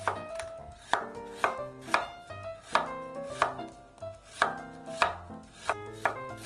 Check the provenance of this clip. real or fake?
real